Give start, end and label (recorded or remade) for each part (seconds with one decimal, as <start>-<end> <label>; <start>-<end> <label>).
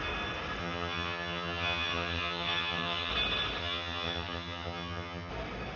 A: 0.0-0.6 recorded; 0.6-3.1 remade; 3.1-3.6 recorded; 3.6-5.3 remade; 5.3-5.8 recorded